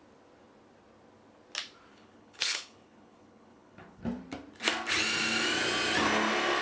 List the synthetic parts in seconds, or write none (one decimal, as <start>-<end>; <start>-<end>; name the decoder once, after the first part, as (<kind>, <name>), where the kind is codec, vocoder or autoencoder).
1.9-4.0 (codec, HILCodec)